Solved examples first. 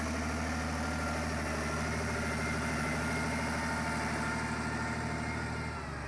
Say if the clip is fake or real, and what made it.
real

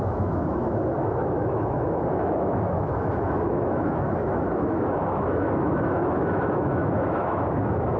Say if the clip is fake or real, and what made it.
fake, autoencoder, DAC-VAE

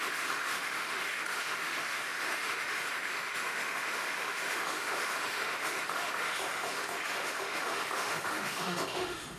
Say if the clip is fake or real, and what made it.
fake, autoencoder, DAC-VAE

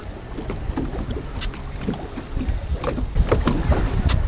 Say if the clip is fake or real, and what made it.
real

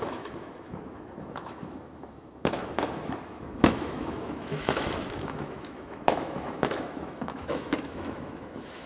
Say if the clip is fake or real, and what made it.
fake, autoencoder, DAC-VAE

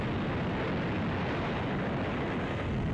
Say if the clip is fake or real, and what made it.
real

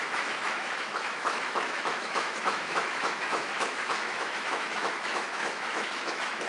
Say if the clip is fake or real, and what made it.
fake, autoencoder, DAC-VAE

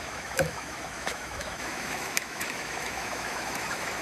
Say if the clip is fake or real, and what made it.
fake, autoencoder, DAC-VAE